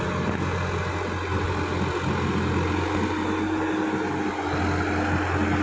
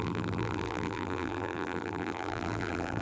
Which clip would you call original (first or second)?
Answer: first